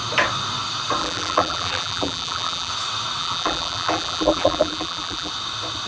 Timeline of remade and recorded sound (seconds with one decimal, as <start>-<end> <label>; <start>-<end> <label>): 0.0-1.0 recorded; 1.0-2.7 remade; 2.7-3.2 recorded; 3.2-5.3 remade; 5.3-5.9 recorded